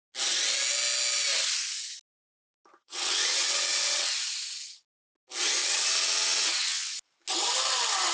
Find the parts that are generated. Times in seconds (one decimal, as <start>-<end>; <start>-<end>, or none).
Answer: 2.8-4.1; 5.6-6.9